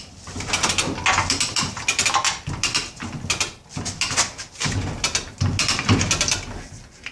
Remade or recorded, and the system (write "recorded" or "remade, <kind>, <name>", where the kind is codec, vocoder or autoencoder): recorded